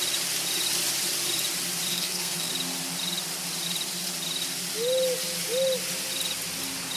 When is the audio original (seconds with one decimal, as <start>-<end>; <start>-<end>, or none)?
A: 0.0-1.9; 2.5-7.0